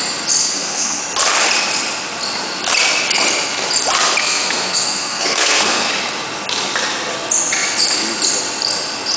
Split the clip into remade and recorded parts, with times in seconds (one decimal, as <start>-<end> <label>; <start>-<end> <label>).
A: 0.0-0.4 recorded; 0.4-1.0 remade; 1.0-4.2 recorded; 4.2-5.9 remade; 5.9-9.2 recorded